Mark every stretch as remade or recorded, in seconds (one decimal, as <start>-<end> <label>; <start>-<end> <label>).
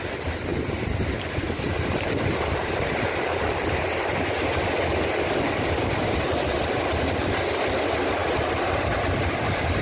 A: 0.0-0.5 recorded; 0.5-4.6 remade; 4.6-5.8 recorded; 5.8-6.6 remade; 6.6-9.8 recorded